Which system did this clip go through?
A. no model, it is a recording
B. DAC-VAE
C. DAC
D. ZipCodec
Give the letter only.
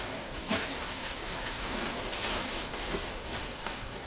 C